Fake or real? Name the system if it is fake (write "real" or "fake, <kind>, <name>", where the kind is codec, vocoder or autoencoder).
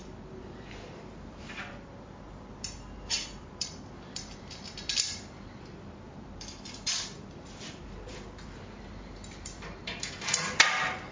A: fake, vocoder, BigVGAN v2